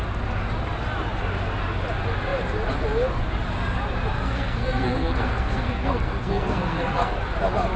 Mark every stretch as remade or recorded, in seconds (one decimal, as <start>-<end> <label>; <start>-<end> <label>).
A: 0.0-4.2 recorded; 4.2-7.2 remade; 7.2-7.8 recorded